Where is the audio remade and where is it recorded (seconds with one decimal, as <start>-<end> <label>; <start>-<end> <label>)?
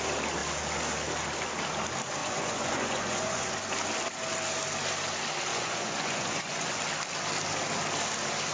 0.0-2.2 recorded; 2.2-3.5 remade; 3.5-5.5 recorded; 5.5-6.8 remade; 6.8-8.5 recorded